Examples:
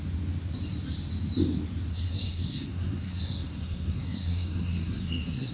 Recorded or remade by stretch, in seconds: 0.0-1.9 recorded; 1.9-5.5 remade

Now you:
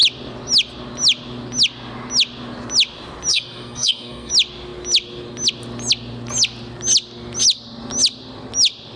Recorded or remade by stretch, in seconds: 0.0-3.3 recorded; 3.3-4.3 remade; 4.3-9.0 recorded

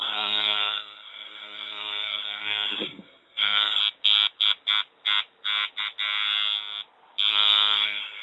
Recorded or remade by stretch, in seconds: 0.0-3.8 remade; 3.8-7.3 recorded; 7.3-8.2 remade

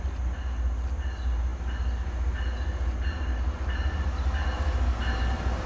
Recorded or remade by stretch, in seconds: 0.0-5.7 recorded

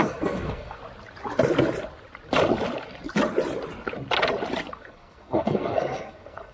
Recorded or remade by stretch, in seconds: 0.0-0.8 remade; 0.8-4.7 recorded; 4.7-6.5 remade

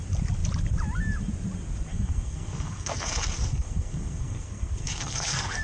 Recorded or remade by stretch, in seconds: 0.0-1.9 recorded; 1.9-5.6 remade

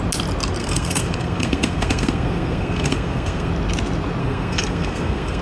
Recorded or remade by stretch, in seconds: 0.0-0.6 recorded; 0.6-3.5 remade; 3.5-4.2 recorded; 4.2-5.4 remade